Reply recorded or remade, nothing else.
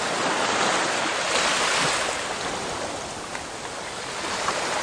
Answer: recorded